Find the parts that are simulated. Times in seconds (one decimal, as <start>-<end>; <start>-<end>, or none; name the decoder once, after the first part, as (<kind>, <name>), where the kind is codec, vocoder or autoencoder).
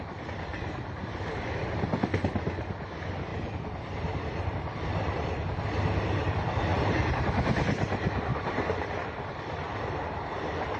0.5-1.2 (vocoder, BigVGAN v2); 3.3-5.6; 6.7-7.2; 8.3-8.9